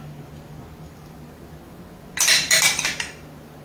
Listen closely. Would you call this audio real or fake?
real